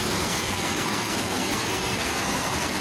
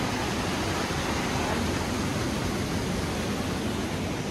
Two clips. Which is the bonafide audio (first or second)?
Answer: second